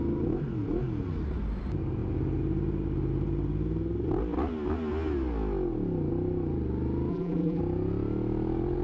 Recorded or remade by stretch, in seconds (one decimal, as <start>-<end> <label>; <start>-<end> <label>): 0.0-7.1 recorded; 7.1-7.6 remade; 7.6-8.8 recorded